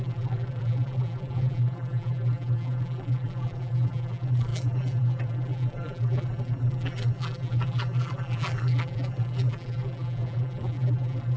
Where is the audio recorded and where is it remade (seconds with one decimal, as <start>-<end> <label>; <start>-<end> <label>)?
0.0-11.4 remade